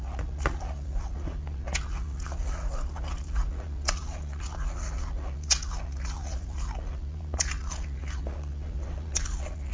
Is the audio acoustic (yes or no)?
no